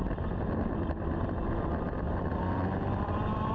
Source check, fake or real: fake